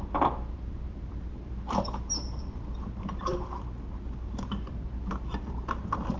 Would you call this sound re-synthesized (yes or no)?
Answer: yes